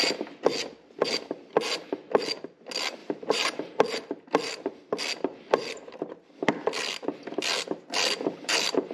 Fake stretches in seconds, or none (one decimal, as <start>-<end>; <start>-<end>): 3.0-3.6